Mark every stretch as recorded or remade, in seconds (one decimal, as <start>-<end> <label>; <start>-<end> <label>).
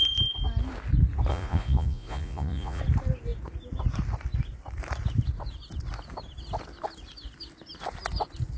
0.0-1.3 recorded; 1.3-2.8 remade; 2.8-8.6 recorded